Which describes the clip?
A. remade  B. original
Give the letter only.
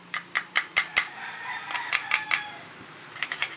A